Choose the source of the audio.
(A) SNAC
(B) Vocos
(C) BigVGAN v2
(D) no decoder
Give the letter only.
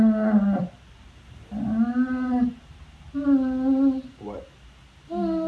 D